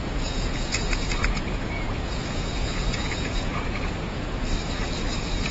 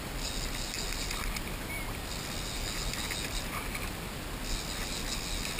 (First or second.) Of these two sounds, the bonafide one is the second